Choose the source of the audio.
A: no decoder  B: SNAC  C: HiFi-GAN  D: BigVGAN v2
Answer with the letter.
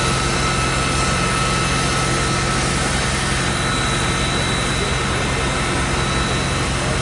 A